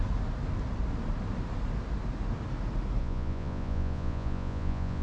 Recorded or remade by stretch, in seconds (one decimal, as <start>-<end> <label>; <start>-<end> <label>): 0.0-3.0 recorded; 3.0-5.0 remade